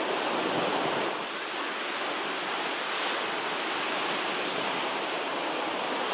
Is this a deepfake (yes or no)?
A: no